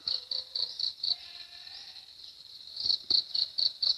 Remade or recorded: recorded